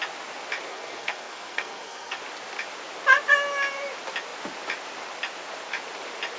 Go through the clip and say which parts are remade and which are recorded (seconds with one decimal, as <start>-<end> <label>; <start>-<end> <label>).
0.0-0.7 recorded; 0.7-2.2 remade; 2.2-6.4 recorded